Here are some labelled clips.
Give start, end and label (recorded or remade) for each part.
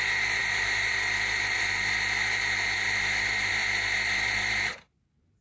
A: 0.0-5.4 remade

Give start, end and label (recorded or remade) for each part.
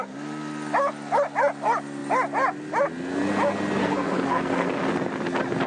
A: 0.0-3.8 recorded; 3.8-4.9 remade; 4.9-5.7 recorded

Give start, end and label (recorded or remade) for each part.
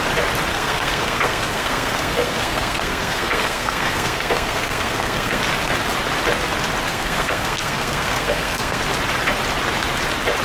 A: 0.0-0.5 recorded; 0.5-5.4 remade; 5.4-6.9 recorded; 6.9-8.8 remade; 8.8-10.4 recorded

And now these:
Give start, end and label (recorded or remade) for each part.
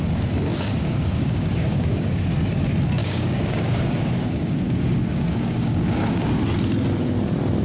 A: 0.0-0.5 recorded; 0.5-2.3 remade; 2.3-3.0 recorded; 3.0-6.4 remade; 6.4-7.6 recorded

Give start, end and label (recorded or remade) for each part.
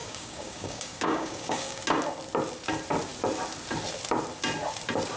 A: 0.0-1.8 remade; 1.8-5.2 recorded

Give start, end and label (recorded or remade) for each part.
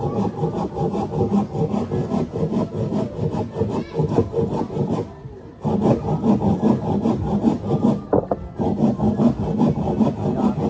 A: 0.0-10.7 recorded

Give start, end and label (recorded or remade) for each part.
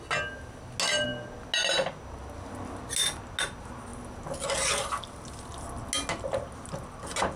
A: 0.0-7.4 recorded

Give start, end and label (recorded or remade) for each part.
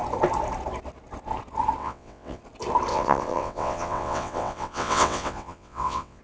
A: 0.0-1.8 recorded; 1.8-2.4 remade; 2.4-2.9 recorded; 2.9-6.2 remade